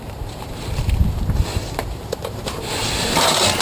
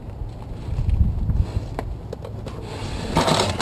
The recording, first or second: second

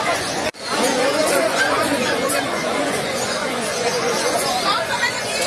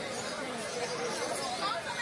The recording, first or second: second